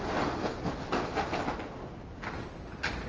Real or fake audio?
real